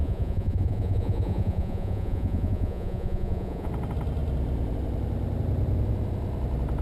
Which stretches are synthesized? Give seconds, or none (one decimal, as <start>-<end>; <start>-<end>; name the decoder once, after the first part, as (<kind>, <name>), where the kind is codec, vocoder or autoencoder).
0.0-3.7 (vocoder, Vocos)